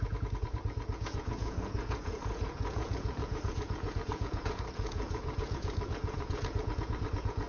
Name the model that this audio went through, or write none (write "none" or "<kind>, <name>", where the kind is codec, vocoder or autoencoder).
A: vocoder, Vocos